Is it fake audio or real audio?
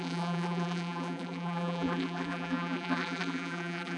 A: fake